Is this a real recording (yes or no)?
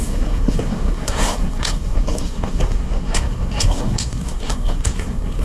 no